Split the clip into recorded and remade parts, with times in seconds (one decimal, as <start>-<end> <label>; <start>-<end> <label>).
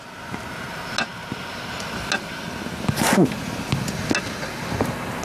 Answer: 0.0-5.2 recorded